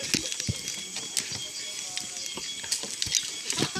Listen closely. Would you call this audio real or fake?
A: real